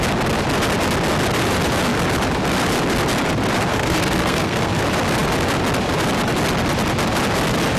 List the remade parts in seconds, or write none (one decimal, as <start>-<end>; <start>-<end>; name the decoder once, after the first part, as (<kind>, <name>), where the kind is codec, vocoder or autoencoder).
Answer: 3.7-4.8 (codec, SNAC)